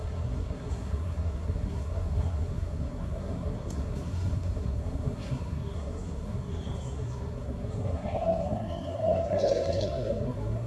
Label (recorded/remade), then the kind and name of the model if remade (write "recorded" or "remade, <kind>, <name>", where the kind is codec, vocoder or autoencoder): remade, codec, SNAC